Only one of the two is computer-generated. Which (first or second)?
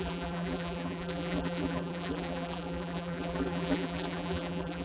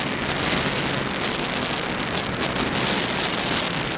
first